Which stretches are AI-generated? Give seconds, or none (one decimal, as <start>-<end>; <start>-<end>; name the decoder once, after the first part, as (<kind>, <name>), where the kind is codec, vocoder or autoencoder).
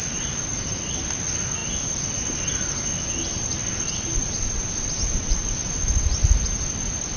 none